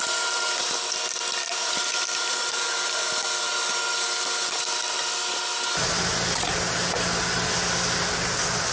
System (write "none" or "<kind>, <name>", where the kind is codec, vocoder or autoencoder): none